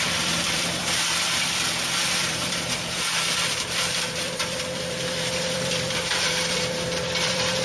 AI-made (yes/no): yes